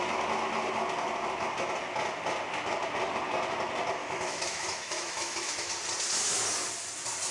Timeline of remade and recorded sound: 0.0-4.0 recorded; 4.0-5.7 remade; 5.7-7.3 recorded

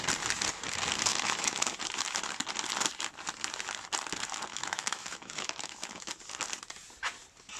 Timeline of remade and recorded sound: 0.0-1.1 recorded; 1.1-1.7 remade; 1.7-4.5 recorded; 4.5-6.2 remade; 6.2-7.6 recorded

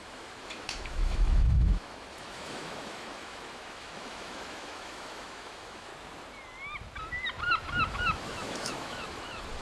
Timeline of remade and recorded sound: 0.0-5.9 remade; 5.9-7.9 recorded; 7.9-9.6 remade

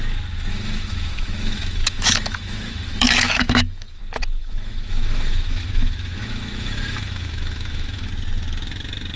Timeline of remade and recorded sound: 0.0-0.5 recorded; 0.5-4.0 remade; 4.0-4.4 recorded; 4.4-8.1 remade; 8.1-9.2 recorded

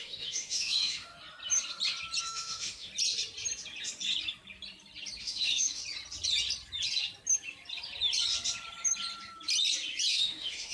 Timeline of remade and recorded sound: 0.0-1.1 remade; 1.1-2.2 recorded; 2.2-2.9 remade; 2.9-5.2 recorded; 5.2-5.8 remade; 5.8-10.1 recorded; 10.1-10.7 remade

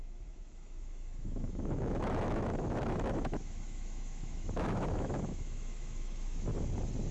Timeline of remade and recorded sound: 0.0-6.5 remade; 6.5-7.1 recorded

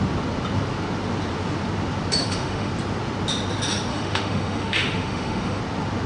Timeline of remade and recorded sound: 0.0-2.2 recorded; 2.2-2.7 remade; 2.7-3.9 recorded; 3.9-5.6 remade; 5.6-6.1 recorded